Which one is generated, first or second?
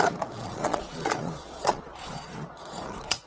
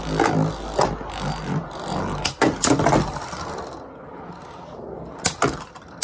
first